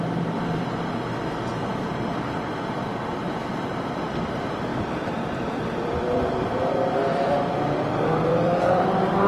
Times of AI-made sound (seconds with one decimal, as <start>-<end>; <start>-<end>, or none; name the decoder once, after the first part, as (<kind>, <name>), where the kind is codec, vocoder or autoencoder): 0.0-4.7 (vocoder, BigVGAN v2); 5.2-6.4; 7.1-9.3